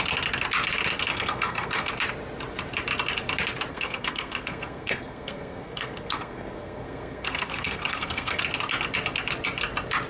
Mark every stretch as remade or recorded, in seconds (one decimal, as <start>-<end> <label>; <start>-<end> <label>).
0.0-1.1 recorded; 1.1-1.9 remade; 1.9-3.7 recorded; 3.7-8.4 remade; 8.4-10.1 recorded